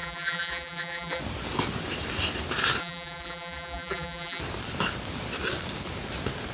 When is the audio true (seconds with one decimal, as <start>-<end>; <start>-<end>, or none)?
1.2-2.8; 4.4-6.5